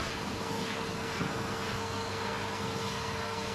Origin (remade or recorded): remade